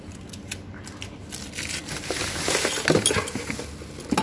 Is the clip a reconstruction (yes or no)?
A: no